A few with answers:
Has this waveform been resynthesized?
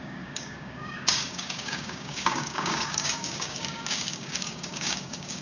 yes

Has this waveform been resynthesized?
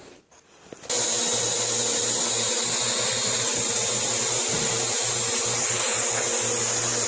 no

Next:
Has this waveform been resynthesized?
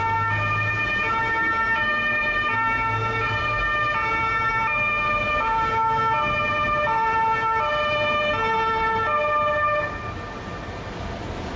no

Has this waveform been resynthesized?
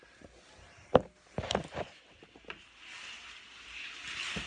no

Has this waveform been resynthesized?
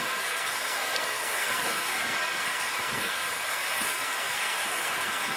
yes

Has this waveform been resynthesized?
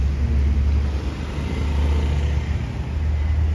no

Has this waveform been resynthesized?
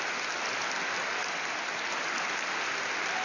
no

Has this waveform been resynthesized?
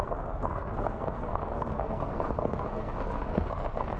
yes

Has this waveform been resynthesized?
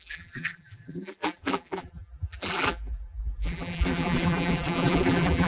yes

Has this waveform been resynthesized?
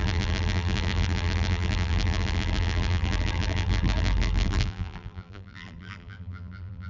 yes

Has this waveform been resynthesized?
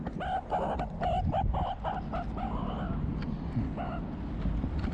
no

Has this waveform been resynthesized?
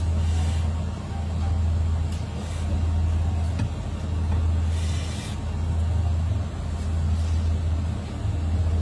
no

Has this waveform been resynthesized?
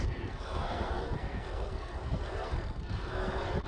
yes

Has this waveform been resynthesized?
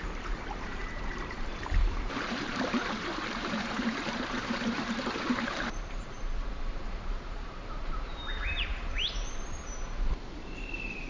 yes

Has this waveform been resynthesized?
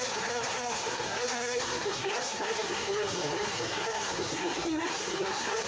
yes